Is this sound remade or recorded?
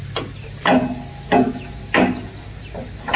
recorded